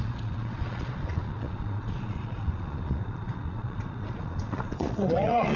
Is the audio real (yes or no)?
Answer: no